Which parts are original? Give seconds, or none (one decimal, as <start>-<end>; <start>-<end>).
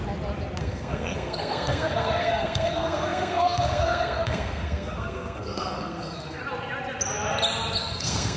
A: 0.0-0.6; 6.4-7.8